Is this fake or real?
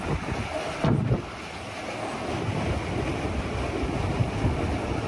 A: real